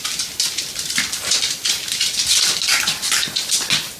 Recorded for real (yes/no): yes